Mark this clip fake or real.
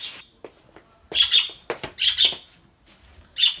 real